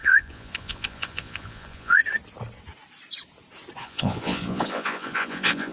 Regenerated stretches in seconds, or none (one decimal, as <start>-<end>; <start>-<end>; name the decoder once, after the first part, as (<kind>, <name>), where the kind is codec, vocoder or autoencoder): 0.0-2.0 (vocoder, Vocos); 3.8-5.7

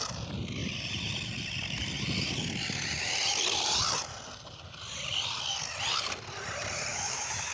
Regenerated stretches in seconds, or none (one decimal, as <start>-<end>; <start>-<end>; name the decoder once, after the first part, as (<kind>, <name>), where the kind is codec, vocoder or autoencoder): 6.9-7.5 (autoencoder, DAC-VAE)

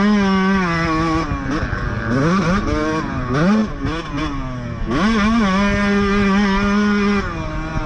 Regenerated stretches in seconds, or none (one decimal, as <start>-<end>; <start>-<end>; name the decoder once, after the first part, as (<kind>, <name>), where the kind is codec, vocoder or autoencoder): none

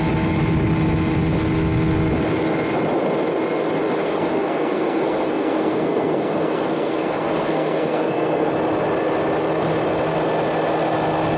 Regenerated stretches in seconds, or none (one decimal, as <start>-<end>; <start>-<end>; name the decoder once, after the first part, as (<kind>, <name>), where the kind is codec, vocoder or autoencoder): 4.0-8.5 (codec, SNAC)